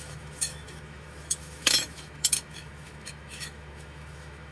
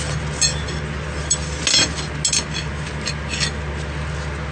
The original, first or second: second